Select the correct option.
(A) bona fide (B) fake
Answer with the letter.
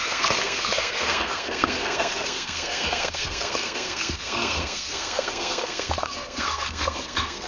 B